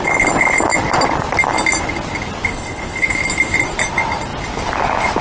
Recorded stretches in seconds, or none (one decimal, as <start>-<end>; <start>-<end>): 0.0-2.5; 3.1-5.2